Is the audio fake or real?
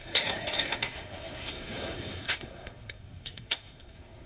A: fake